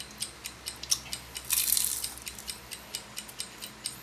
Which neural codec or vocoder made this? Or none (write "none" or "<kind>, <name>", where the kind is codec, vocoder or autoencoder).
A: none